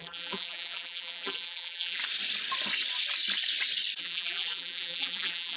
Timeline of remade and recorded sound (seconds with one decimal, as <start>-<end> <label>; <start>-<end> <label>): 0.0-2.0 remade; 2.0-4.0 recorded; 4.0-5.6 remade